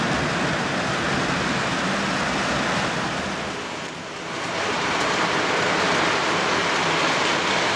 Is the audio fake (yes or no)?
no